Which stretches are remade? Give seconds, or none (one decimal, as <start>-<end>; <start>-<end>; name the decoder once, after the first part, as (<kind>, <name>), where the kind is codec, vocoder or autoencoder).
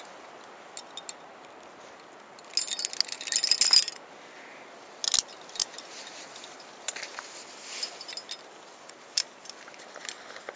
5.6-8.1 (vocoder, BigVGAN v2)